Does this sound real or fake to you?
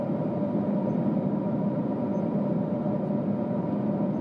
real